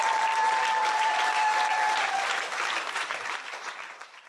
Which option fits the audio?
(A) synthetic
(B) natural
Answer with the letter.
A